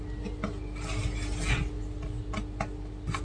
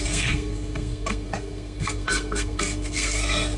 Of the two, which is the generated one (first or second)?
second